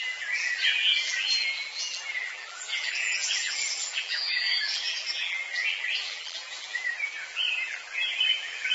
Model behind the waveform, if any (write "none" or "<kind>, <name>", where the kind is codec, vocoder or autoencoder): vocoder, BigVGAN v2